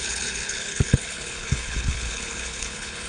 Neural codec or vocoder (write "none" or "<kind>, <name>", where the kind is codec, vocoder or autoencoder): codec, HILCodec